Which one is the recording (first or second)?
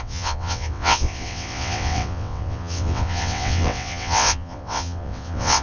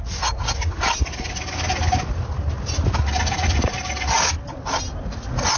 second